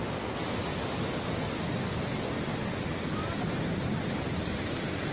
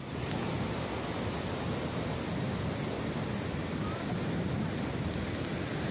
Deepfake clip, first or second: second